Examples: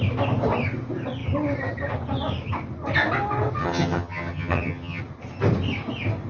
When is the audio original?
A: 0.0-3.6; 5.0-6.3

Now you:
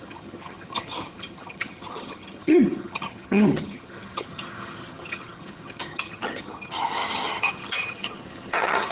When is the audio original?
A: none